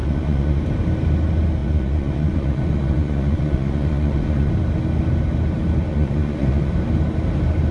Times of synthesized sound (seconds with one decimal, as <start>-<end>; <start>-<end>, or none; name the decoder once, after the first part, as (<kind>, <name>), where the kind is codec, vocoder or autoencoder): 0.0-0.6 (vocoder, Vocos); 1.6-4.5; 5.9-6.7

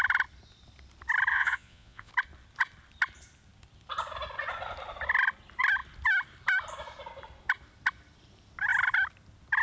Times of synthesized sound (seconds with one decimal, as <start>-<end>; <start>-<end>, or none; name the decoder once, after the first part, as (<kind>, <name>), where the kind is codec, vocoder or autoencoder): 1.3-2.1 (vocoder, Vocos)

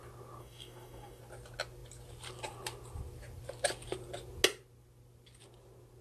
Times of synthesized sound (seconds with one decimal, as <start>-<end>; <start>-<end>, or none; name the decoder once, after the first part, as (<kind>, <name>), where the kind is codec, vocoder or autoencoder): 0.4-1.2 (codec, DAC)